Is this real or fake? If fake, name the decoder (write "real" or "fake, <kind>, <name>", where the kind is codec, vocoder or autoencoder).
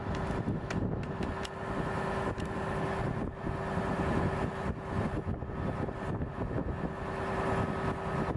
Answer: real